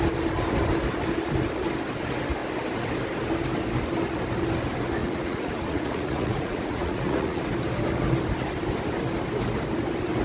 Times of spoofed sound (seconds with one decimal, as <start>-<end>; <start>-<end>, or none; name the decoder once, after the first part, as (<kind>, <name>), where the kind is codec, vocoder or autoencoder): 5.0-7.4 (vocoder, Vocos)